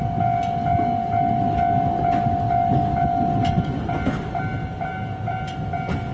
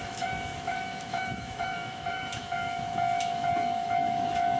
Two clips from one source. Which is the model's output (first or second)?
second